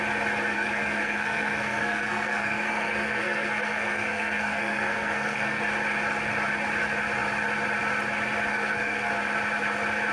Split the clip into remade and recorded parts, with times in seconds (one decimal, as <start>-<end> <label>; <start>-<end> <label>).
0.0-0.5 recorded; 0.5-5.6 remade; 5.6-8.5 recorded; 8.5-9.1 remade; 9.1-10.1 recorded